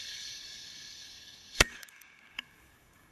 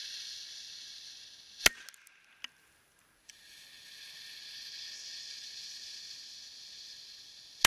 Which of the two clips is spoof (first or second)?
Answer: first